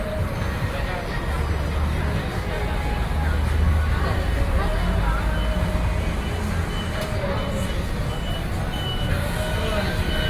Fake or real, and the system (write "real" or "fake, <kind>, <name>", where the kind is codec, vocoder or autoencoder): real